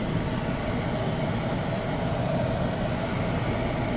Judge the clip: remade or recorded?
recorded